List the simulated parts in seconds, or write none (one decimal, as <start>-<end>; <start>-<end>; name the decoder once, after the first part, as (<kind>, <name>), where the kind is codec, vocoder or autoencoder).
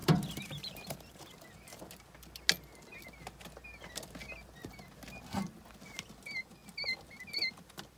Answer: 0.0-1.8 (vocoder, BigVGAN v2)